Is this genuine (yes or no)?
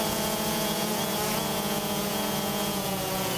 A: no